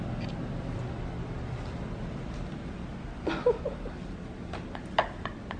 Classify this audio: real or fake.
real